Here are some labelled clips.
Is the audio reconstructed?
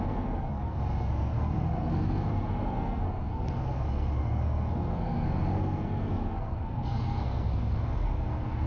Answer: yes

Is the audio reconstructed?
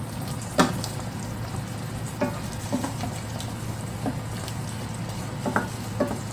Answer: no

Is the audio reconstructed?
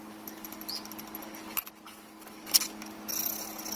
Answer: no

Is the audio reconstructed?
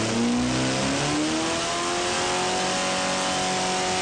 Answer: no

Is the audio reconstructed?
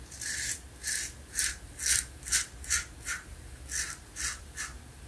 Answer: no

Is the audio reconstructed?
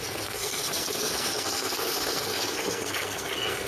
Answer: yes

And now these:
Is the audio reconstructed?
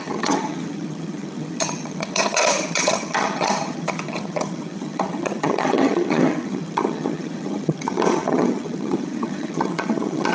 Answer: yes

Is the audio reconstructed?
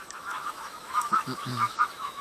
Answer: yes